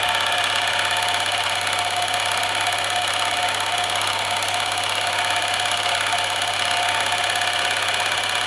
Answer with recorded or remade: recorded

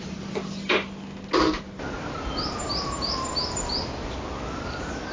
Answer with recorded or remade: recorded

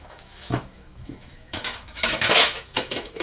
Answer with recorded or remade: remade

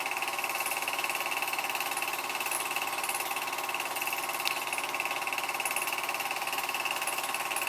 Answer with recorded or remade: recorded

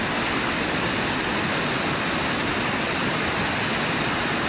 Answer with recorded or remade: recorded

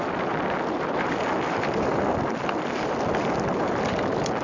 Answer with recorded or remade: recorded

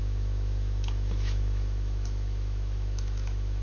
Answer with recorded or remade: remade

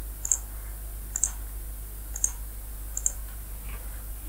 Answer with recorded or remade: recorded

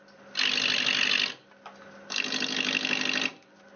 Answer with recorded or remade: recorded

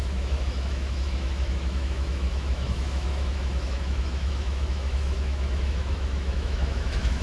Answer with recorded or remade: remade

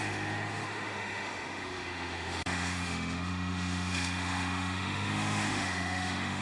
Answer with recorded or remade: remade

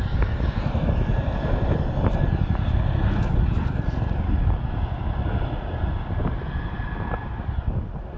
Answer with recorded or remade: recorded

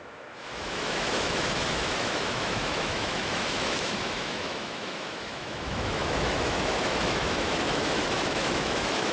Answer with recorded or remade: remade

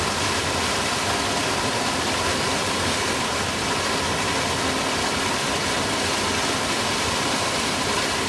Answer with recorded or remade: recorded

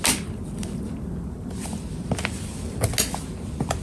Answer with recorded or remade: recorded